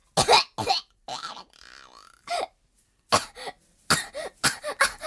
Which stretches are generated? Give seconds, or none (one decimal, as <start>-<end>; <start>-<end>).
none